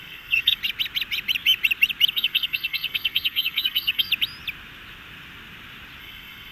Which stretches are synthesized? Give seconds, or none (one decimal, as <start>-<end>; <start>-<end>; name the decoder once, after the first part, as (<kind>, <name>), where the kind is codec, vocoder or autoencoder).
0.0-0.6 (codec, SNAC); 2.1-4.1; 6.0-6.5